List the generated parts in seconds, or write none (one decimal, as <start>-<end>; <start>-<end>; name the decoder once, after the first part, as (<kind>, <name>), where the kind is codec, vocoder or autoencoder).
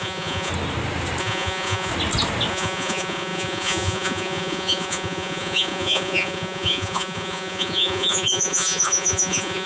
0.0-0.5 (vocoder, Vocos); 1.2-1.9; 2.5-9.7